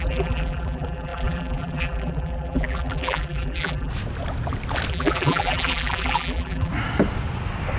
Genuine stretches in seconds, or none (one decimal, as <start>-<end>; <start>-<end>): 3.9-4.9; 6.7-7.8